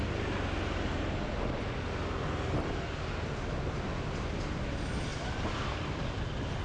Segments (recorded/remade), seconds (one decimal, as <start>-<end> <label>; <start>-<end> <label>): 0.0-5.1 recorded; 5.1-6.6 remade